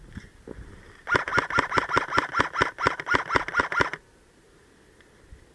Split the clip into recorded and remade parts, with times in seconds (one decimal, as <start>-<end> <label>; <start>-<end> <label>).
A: 0.0-5.5 remade